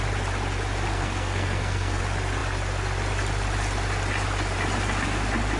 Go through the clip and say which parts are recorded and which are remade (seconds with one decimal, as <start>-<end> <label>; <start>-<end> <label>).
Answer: 0.0-0.9 recorded; 0.9-2.0 remade; 2.0-5.6 recorded